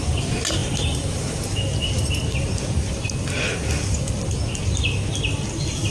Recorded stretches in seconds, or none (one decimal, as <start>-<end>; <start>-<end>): 0.0-5.9